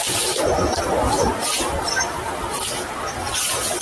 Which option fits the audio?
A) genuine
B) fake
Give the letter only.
A